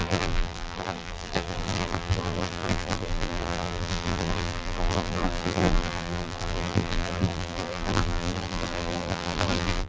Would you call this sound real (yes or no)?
no